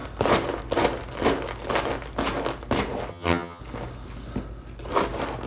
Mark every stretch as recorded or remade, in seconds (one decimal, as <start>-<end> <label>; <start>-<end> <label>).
0.0-3.1 recorded; 3.1-3.6 remade; 3.6-5.5 recorded